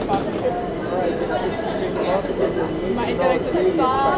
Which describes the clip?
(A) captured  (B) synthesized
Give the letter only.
A